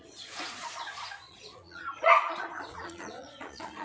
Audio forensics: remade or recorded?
remade